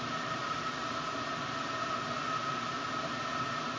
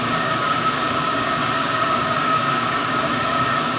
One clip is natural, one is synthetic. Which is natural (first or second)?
first